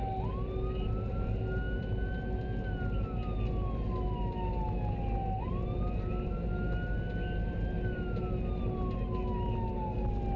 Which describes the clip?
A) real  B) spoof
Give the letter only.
A